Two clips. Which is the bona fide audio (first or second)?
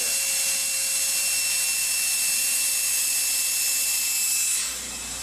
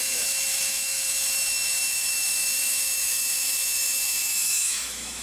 first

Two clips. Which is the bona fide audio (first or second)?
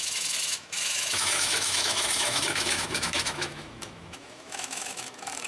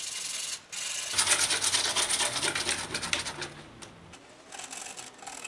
second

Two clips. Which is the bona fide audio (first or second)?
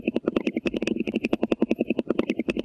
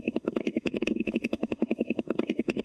first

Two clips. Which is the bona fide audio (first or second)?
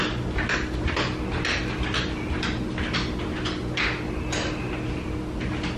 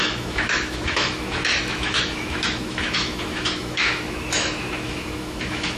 first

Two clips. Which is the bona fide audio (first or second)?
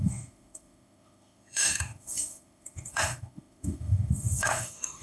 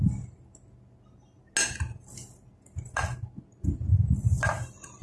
second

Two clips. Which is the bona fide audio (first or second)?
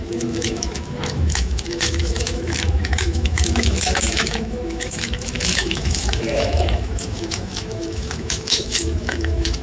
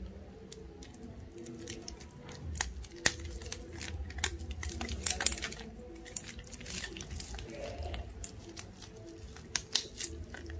second